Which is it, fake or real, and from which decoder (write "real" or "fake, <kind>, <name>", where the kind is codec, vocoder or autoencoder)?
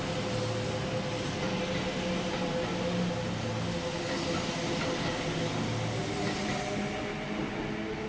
real